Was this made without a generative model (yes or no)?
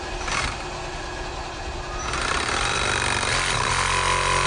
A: yes